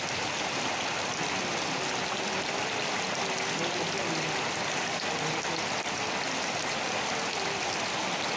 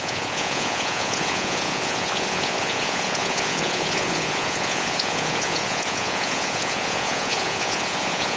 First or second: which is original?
first